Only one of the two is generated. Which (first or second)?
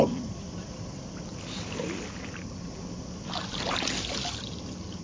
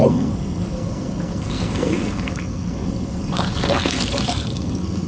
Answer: second